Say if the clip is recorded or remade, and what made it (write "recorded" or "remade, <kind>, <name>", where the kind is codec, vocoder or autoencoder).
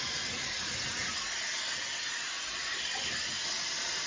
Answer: recorded